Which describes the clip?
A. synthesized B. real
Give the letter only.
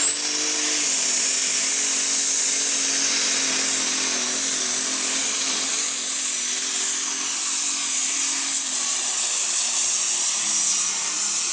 B